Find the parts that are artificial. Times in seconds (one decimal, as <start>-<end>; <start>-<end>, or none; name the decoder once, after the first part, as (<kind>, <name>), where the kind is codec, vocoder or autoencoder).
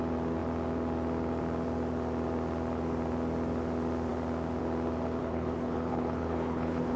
5.2-7.0 (codec, HILCodec)